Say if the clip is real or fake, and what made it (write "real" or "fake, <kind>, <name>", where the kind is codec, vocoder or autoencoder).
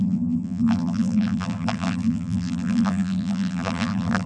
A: fake, vocoder, BigVGAN v2